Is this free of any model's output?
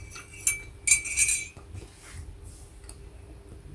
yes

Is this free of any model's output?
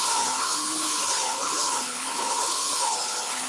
no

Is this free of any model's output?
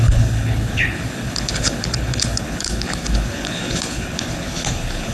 no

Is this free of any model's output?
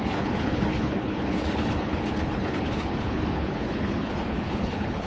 no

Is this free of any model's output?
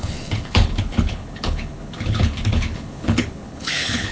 no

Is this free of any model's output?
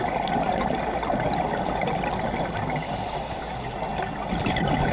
yes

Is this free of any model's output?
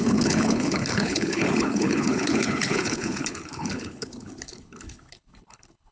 no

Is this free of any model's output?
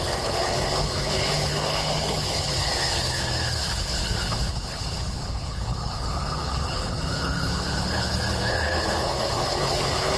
no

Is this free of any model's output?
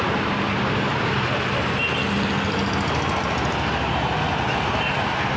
yes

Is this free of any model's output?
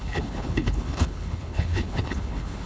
no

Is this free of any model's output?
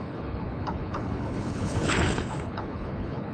no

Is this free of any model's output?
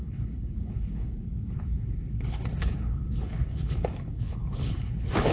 no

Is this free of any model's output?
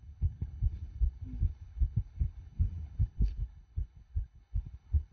no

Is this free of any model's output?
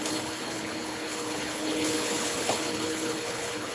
no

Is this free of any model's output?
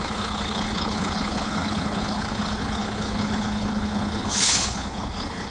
no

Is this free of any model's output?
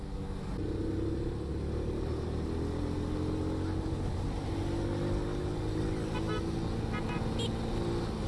yes